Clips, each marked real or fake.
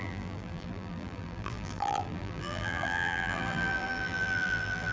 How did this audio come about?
fake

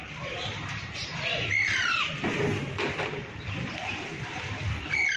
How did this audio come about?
fake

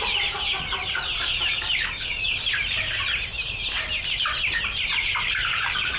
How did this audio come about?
fake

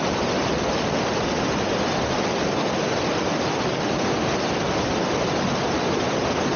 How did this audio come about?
fake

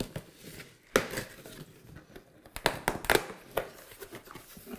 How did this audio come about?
real